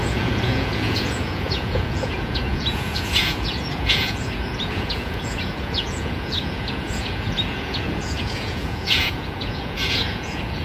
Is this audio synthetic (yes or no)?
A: yes